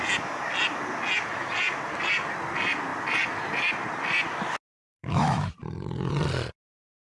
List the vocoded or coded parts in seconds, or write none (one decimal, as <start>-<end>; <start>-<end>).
4.8-5.5